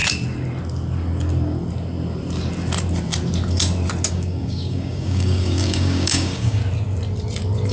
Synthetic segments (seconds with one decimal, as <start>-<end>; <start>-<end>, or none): 4.1-6.6